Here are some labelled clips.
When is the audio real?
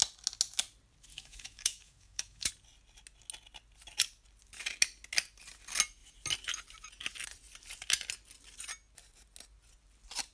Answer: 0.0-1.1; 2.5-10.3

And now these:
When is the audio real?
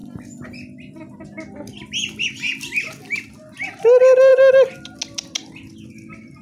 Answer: 0.0-6.4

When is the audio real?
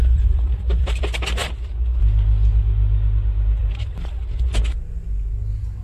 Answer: 1.0-5.8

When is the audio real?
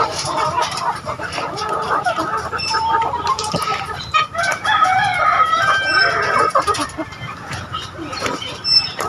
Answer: 6.8-7.4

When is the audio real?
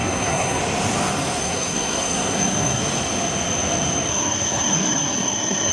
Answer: 0.6-1.4; 2.8-4.1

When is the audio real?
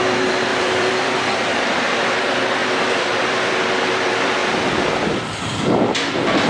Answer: none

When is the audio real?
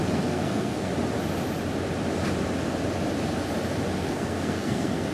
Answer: 0.9-4.0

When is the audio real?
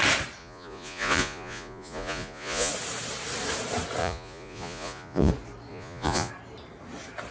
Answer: 0.0-0.4; 2.7-4.0; 5.3-5.7; 6.3-7.3